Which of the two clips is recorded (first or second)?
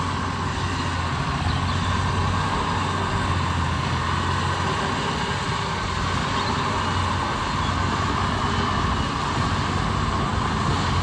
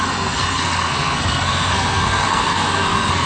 first